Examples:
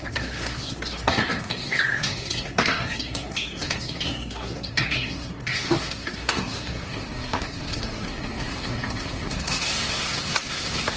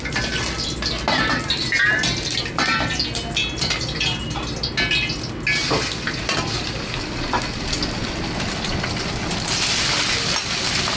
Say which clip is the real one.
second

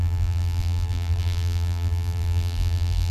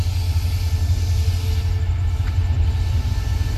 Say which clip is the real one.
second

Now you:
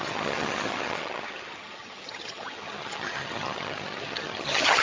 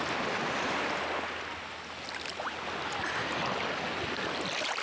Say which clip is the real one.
second